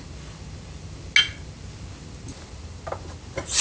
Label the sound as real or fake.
real